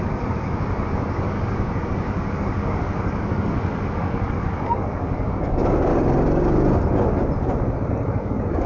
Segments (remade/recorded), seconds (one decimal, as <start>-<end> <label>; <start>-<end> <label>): 0.0-5.9 remade; 5.9-7.9 recorded; 7.9-8.7 remade

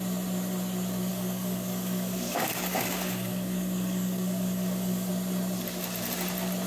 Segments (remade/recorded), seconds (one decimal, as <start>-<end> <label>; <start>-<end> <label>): 0.0-1.1 recorded; 1.1-5.1 remade; 5.1-6.7 recorded

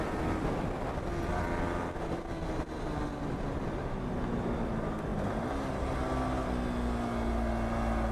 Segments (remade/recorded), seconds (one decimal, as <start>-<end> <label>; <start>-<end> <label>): 0.0-8.1 recorded

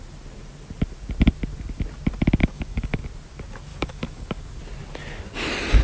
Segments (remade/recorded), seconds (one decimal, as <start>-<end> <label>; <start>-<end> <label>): 0.0-2.4 recorded; 2.4-3.0 remade; 3.0-3.7 recorded; 3.7-4.6 remade; 4.6-5.8 recorded

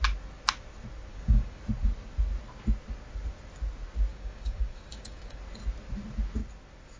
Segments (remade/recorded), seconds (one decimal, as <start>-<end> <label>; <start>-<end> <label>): 0.0-1.1 recorded; 1.1-1.6 remade; 1.6-4.1 recorded; 4.1-5.4 remade; 5.4-7.0 recorded

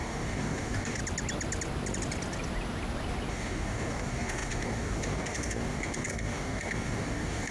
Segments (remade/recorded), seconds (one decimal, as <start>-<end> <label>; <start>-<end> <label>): 0.0-1.0 remade; 1.0-3.3 recorded; 3.3-7.5 remade

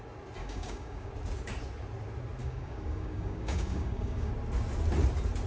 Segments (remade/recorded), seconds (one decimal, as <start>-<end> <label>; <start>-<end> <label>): 0.0-0.4 recorded; 0.4-1.1 remade; 1.1-2.4 recorded; 2.4-4.3 remade; 4.3-5.5 recorded

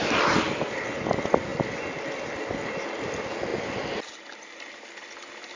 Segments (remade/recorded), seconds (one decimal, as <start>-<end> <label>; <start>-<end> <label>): 0.0-5.6 recorded